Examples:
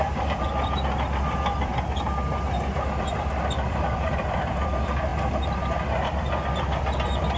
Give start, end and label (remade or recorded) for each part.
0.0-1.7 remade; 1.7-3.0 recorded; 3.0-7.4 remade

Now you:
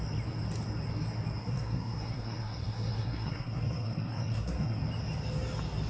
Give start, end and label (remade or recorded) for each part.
0.0-1.4 recorded; 1.4-4.8 remade; 4.8-5.9 recorded

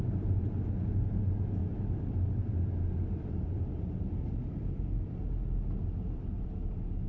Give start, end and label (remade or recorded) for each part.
0.0-7.1 recorded